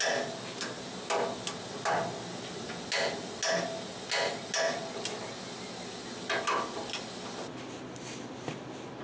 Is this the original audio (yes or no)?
yes